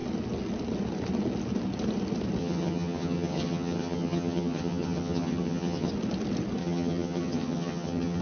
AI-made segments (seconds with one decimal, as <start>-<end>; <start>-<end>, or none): 2.4-5.9; 6.6-8.2

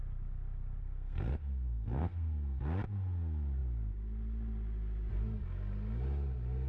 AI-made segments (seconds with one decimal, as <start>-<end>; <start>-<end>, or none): 0.8-2.6